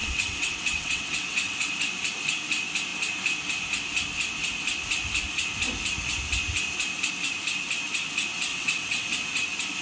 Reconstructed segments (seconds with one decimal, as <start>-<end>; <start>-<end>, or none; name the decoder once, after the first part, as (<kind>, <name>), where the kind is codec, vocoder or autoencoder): 0.0-1.7 (vocoder, WaveNeXt); 8.5-9.1